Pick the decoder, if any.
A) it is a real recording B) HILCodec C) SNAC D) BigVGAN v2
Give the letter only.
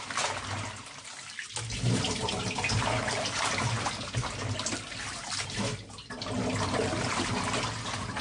A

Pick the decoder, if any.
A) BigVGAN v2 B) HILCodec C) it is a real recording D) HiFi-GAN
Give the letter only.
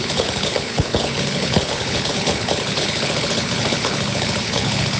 B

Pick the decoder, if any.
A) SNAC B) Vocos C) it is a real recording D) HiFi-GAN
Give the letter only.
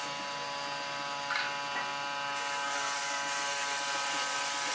C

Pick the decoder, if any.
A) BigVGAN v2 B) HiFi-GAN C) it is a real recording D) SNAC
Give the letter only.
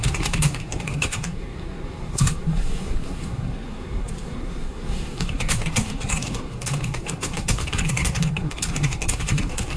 D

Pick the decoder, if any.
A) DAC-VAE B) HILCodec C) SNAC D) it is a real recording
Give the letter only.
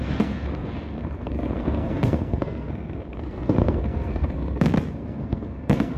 C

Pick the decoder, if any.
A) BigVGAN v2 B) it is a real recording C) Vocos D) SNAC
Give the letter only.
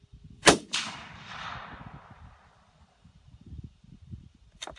A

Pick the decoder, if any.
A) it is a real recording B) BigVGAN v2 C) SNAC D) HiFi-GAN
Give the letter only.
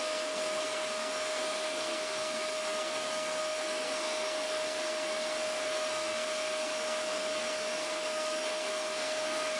C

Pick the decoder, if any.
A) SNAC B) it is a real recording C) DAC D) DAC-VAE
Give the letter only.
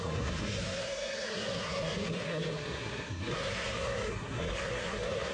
A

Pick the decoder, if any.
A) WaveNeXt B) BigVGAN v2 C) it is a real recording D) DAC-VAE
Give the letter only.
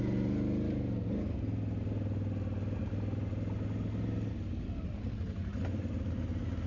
C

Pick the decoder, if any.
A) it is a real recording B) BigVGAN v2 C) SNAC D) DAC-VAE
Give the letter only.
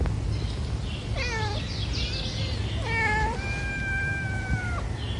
A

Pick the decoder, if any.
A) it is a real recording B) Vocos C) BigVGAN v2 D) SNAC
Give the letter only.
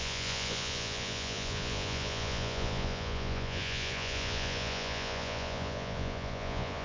B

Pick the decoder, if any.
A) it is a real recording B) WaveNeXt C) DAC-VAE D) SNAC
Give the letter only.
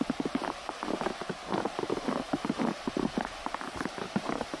A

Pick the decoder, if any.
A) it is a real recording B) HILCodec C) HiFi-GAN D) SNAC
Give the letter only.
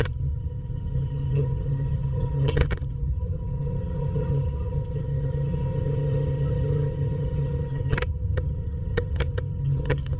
C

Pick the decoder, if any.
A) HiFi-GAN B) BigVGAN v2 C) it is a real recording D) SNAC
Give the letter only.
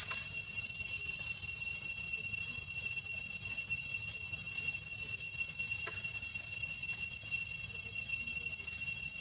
B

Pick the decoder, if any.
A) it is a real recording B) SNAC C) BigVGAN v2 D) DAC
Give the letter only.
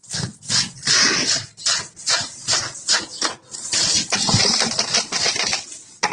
A